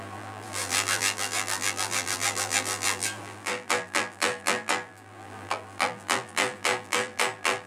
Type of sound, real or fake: fake